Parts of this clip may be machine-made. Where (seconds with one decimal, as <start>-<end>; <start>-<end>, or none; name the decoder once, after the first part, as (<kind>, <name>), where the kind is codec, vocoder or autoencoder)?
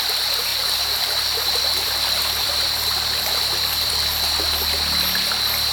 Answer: 0.5-3.9 (vocoder, BigVGAN v2)